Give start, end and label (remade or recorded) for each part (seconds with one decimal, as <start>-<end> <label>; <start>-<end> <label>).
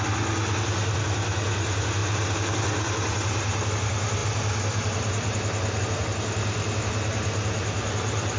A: 0.0-2.0 recorded; 2.0-3.7 remade; 3.7-8.4 recorded